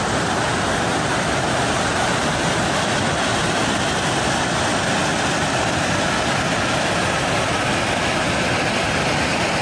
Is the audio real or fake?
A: real